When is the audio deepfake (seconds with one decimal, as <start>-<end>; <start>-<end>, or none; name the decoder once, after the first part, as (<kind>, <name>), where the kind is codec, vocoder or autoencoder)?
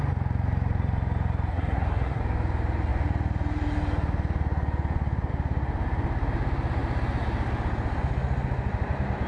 1.5-2.2 (codec, SNAC)